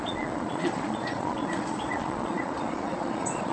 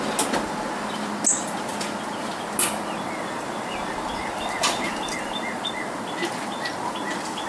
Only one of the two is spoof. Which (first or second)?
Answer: first